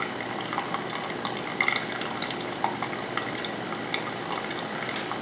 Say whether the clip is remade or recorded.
recorded